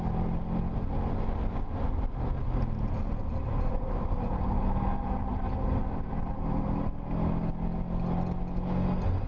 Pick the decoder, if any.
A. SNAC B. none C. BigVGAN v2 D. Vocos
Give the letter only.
B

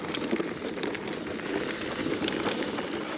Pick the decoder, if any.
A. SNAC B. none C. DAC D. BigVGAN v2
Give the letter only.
D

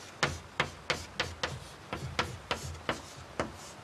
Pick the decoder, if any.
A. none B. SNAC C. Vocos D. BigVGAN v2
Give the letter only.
A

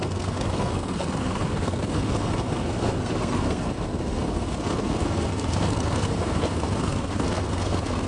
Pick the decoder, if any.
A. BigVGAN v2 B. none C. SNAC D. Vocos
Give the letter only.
C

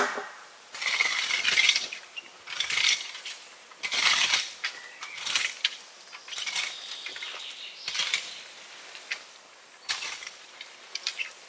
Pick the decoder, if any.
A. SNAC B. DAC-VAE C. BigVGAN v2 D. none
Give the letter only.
C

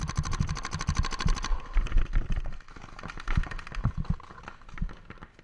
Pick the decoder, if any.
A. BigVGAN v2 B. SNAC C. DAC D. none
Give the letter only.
D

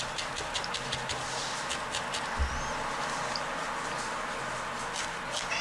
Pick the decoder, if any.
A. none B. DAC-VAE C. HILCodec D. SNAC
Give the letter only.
A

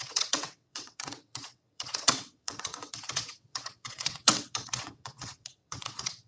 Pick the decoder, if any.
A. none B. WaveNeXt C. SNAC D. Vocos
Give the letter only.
B